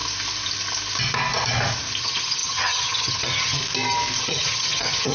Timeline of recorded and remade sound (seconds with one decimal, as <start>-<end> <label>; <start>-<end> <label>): 0.0-2.0 recorded; 2.0-3.6 remade; 3.6-4.2 recorded; 4.2-5.1 remade